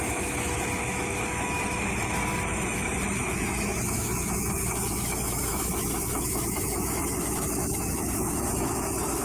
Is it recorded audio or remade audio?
remade